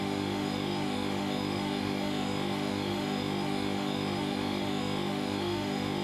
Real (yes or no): no